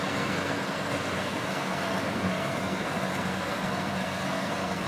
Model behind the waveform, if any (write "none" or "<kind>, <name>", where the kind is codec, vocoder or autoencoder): codec, SNAC